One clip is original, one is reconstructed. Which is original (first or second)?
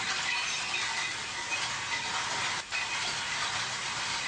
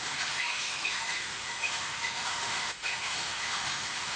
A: first